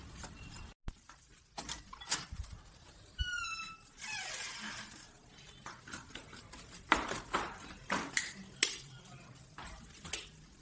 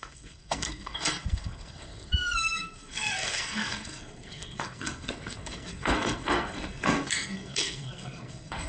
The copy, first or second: second